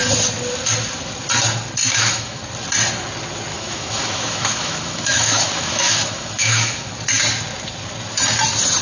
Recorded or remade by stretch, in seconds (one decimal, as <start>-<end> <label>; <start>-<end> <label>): 0.0-1.8 recorded; 1.8-2.4 remade; 2.4-3.5 recorded; 3.5-6.9 remade; 6.9-8.8 recorded